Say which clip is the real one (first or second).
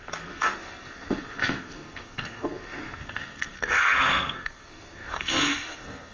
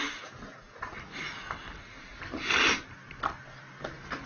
second